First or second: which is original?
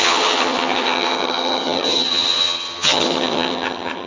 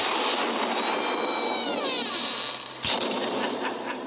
second